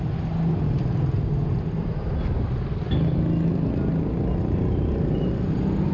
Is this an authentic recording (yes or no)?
yes